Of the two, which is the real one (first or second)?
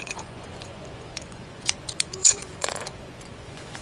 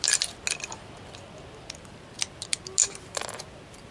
second